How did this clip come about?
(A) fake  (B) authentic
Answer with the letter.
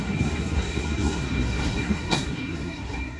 A